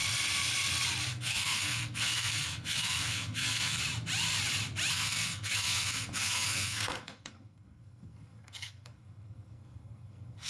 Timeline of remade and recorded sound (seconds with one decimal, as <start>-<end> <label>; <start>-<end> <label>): 0.0-1.1 recorded; 1.1-3.8 remade; 3.8-4.9 recorded; 4.9-10.5 remade